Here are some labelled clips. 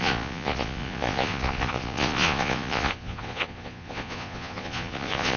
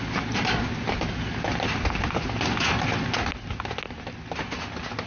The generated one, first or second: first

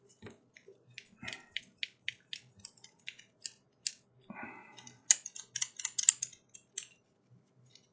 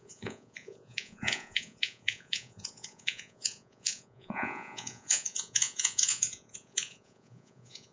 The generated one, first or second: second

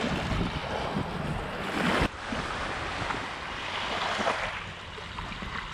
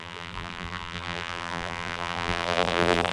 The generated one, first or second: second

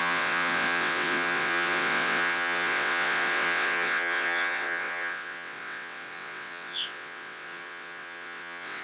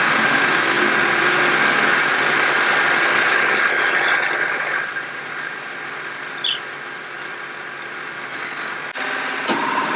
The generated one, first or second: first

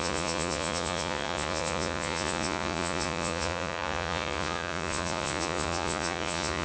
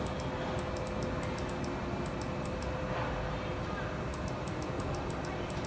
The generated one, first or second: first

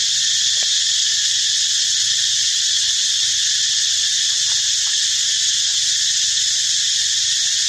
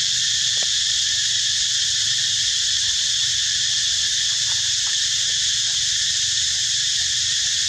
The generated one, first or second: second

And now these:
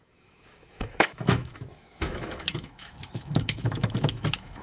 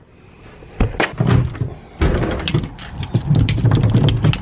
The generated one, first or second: first